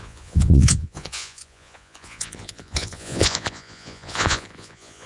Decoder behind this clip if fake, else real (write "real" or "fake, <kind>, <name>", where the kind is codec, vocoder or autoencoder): fake, vocoder, Vocos